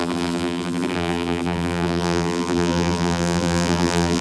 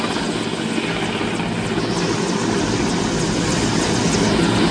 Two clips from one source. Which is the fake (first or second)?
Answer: first